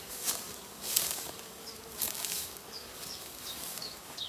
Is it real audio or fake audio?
fake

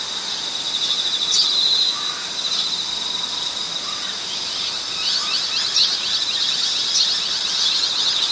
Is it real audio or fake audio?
real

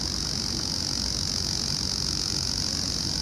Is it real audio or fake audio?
real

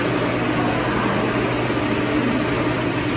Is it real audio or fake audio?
real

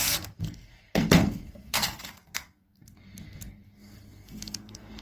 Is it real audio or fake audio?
fake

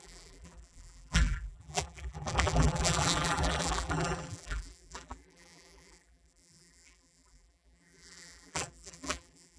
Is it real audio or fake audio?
fake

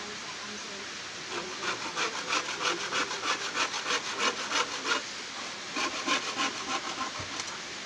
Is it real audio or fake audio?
real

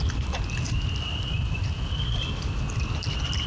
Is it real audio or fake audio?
real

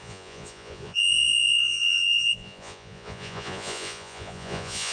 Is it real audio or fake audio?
fake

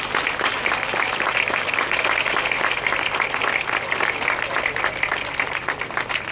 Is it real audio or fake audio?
real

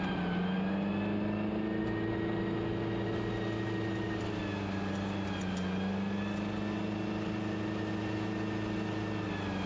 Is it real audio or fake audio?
real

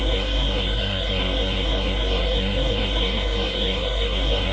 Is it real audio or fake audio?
fake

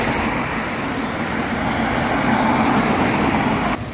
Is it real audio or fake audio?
real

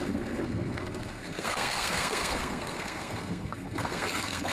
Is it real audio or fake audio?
fake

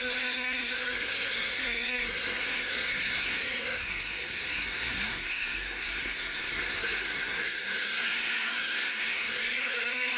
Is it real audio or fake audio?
fake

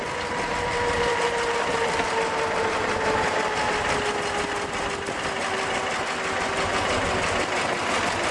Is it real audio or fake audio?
real